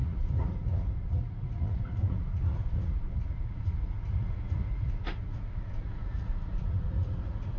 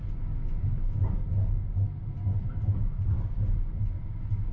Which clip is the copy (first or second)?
first